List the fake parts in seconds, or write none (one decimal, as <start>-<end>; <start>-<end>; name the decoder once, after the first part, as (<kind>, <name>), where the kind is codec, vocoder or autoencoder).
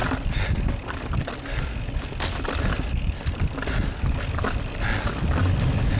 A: none